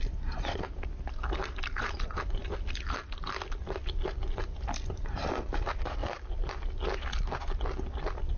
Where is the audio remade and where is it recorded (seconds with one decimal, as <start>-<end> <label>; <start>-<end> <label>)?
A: 0.0-8.4 recorded